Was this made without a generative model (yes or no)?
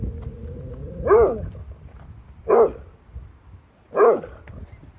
yes